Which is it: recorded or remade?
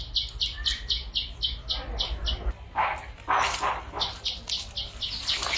recorded